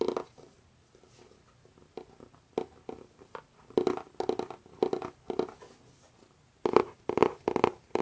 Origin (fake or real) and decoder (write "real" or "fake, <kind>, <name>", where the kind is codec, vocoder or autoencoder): real